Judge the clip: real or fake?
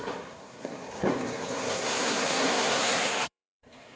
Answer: fake